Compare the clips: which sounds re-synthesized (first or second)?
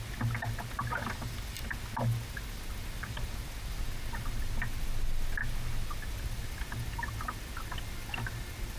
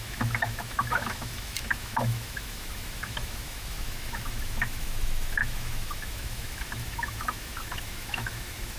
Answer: second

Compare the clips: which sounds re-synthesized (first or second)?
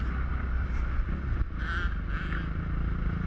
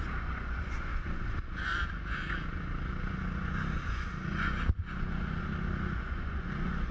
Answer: second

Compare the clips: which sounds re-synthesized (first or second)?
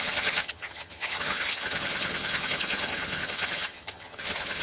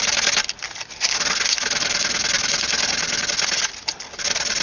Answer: first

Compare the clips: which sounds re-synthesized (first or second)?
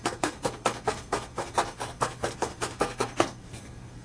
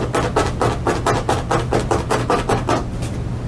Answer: first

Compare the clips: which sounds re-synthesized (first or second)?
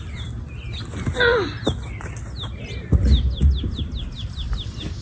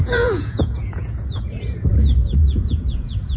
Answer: second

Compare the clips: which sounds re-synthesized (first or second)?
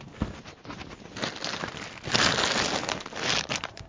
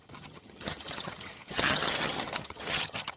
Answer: second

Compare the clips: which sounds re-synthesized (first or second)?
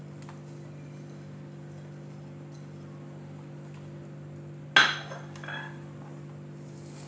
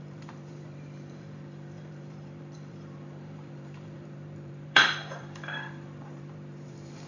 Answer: second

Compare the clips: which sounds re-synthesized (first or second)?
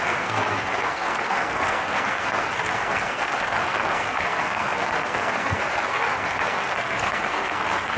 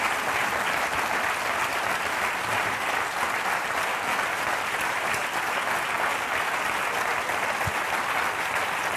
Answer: first